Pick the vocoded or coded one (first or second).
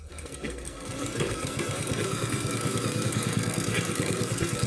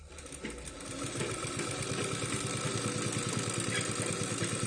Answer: first